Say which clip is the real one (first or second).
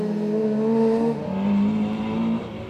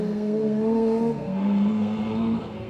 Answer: first